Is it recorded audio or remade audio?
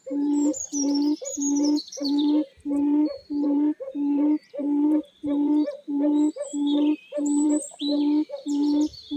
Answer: remade